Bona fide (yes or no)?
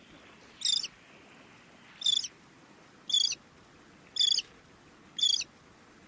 yes